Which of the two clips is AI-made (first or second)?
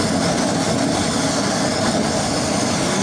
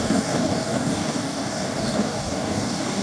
second